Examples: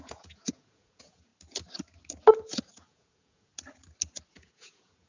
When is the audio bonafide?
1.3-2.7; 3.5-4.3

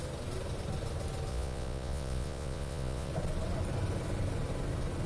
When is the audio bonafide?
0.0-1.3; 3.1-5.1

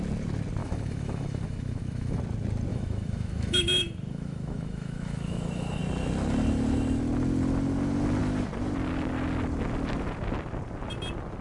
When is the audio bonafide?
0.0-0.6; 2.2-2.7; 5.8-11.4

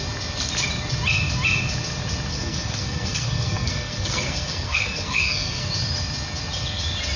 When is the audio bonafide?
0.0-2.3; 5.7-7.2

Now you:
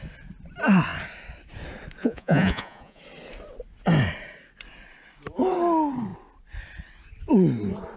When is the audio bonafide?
0.0-2.0; 3.0-8.0